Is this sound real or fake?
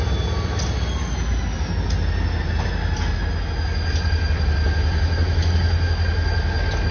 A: real